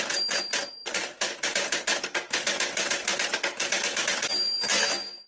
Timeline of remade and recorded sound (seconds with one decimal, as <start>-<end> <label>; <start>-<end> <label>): 0.0-5.3 recorded